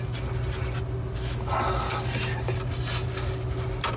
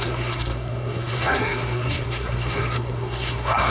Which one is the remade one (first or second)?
second